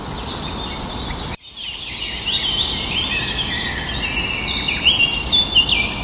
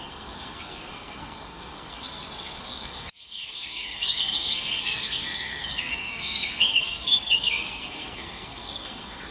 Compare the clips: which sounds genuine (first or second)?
first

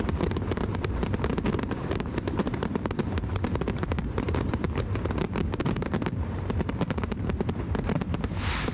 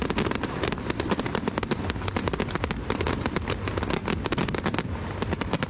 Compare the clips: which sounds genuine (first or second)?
second